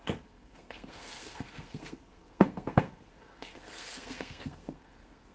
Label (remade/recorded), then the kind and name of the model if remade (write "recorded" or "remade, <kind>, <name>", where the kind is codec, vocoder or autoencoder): remade, codec, SNAC